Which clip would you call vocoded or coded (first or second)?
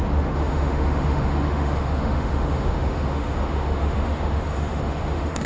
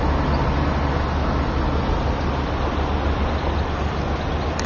first